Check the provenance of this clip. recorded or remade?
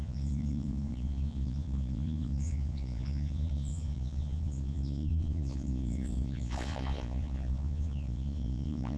remade